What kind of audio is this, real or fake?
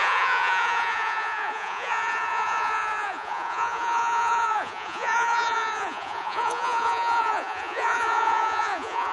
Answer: fake